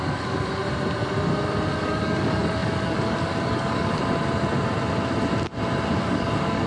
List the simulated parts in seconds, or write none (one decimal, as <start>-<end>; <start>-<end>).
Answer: 0.0-0.6; 1.7-4.0; 6.0-6.7